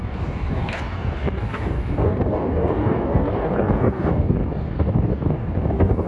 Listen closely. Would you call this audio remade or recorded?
remade